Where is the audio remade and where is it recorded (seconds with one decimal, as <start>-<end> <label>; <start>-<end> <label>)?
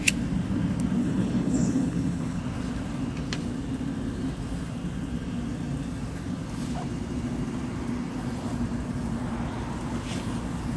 0.0-1.0 recorded; 1.0-2.4 remade; 2.4-10.8 recorded